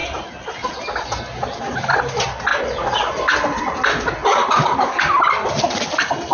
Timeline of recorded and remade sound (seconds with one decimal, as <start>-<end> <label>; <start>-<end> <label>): 0.0-6.3 recorded

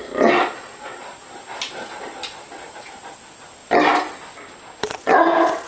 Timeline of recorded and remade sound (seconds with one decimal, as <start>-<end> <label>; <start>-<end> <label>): 0.0-5.7 recorded